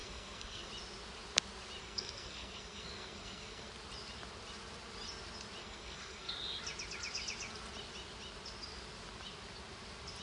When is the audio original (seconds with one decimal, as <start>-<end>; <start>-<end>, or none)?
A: 0.7-1.8; 3.7-5.6; 6.3-10.2